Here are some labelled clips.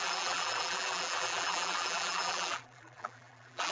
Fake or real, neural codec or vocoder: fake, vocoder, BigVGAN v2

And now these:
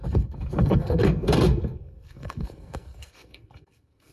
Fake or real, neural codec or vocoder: fake, codec, SNAC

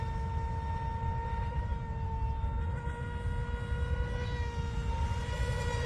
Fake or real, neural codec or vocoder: real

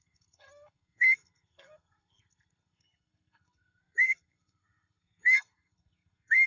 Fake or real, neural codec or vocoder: fake, codec, SNAC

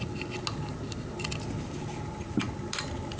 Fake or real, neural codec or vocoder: real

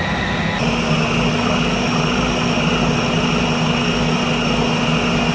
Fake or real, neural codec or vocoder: real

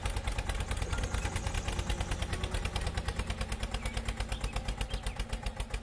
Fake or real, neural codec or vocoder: real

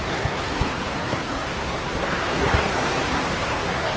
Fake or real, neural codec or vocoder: fake, codec, SNAC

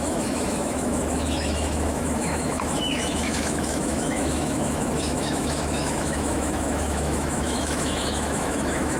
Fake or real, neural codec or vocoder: fake, autoencoder, DAC-VAE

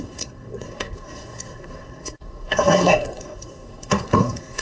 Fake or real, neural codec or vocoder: fake, codec, SNAC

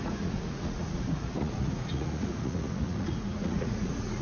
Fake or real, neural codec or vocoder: fake, vocoder, Vocos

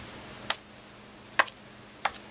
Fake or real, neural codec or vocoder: real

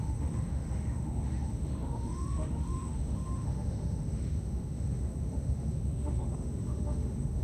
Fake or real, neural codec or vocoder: fake, autoencoder, DAC-VAE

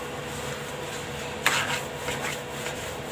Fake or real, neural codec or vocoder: real